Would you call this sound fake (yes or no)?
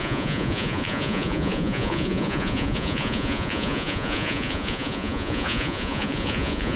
yes